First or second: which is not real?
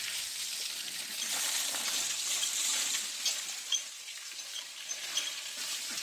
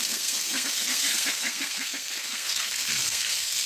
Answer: second